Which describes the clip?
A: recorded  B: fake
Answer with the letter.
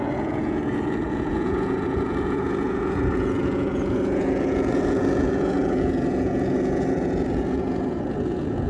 B